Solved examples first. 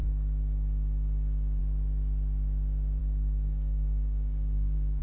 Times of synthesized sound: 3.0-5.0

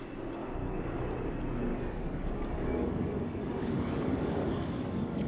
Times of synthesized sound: 0.4-1.0; 1.7-5.3

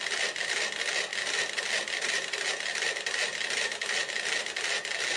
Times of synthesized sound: none